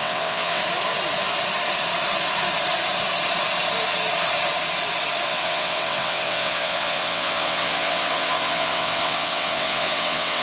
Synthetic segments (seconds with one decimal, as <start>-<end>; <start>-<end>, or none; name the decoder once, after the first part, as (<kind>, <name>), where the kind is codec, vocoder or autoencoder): 0.0-0.6 (vocoder, WaveNeXt); 5.3-10.4